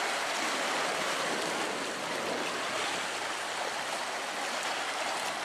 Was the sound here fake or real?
real